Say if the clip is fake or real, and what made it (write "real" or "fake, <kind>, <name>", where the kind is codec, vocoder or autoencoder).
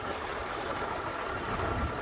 real